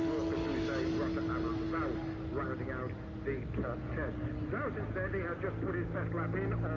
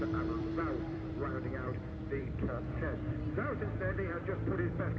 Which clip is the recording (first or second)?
first